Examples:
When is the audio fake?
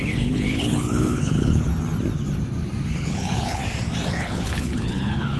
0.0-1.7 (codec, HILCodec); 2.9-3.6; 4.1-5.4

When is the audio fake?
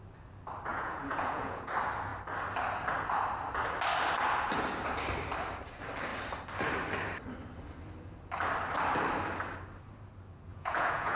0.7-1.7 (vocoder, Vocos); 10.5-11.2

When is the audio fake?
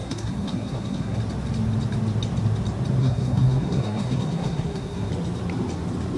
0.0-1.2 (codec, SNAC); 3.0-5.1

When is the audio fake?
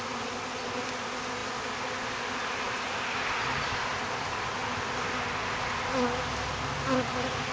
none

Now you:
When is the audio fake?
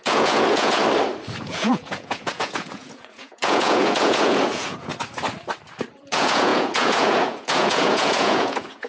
0.0-0.8 (vocoder, Vocos); 1.4-4.9; 6.0-8.9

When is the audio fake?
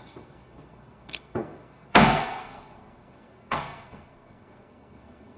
0.0-5.4 (codec, SNAC)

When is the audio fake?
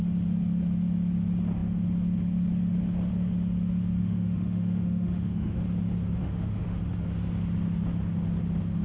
4.0-5.6 (autoencoder, DAC-VAE); 6.2-6.8